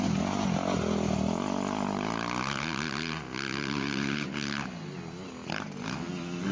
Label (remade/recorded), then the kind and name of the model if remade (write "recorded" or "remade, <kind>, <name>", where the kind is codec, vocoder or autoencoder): recorded